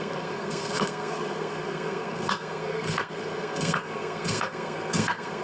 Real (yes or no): no